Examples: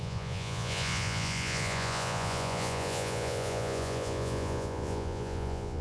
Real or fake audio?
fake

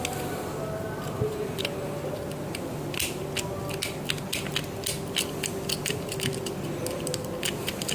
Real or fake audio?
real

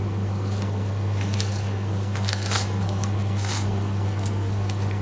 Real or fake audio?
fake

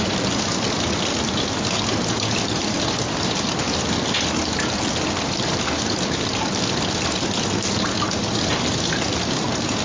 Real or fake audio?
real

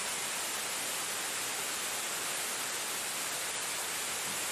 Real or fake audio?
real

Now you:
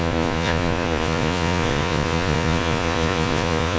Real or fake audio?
fake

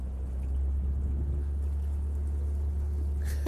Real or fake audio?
real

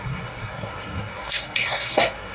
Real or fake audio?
fake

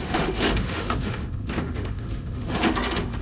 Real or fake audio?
fake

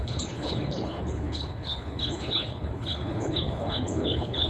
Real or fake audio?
fake